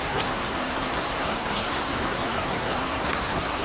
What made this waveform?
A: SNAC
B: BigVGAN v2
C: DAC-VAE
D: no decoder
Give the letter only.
A